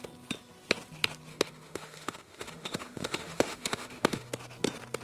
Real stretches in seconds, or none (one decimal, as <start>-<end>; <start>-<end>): 0.0-1.3; 4.3-5.0